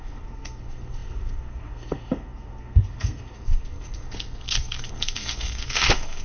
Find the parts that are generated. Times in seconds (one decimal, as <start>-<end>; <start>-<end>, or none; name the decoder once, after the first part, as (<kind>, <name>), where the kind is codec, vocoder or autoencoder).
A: 0.0-6.2 (codec, SNAC)

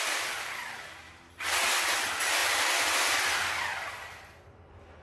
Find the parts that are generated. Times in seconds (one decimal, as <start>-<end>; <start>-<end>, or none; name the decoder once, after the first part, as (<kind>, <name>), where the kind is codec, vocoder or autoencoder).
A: none